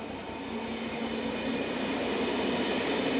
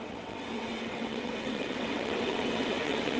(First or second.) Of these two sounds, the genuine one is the first